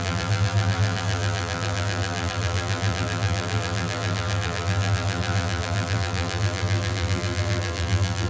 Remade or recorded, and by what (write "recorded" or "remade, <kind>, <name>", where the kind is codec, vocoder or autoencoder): remade, vocoder, BigVGAN v2